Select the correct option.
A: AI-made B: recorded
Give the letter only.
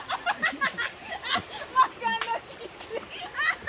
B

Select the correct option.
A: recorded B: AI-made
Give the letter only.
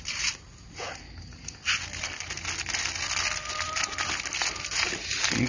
A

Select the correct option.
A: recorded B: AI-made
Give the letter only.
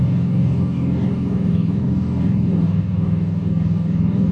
B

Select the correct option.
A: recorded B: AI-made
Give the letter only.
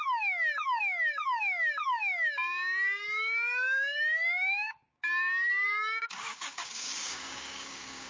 B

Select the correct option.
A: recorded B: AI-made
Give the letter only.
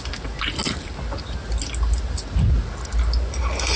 A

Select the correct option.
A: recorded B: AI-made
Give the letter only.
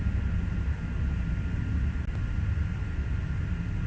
A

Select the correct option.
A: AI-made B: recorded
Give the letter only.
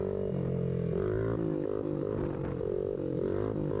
B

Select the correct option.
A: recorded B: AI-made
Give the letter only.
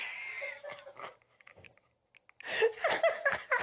A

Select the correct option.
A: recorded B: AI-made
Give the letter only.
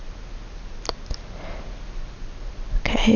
A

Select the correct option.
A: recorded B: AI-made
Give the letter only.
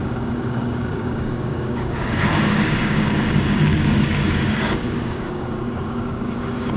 B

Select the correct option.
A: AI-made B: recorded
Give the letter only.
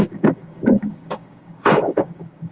A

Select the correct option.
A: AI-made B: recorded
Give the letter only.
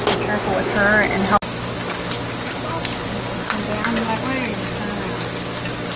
B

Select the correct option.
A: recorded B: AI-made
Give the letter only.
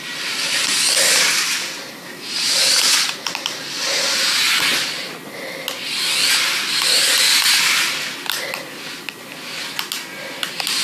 A